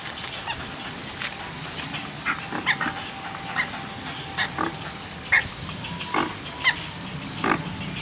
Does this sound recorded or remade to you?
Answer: recorded